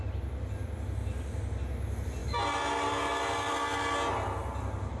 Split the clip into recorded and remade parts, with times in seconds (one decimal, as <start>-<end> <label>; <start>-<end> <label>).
0.0-5.0 recorded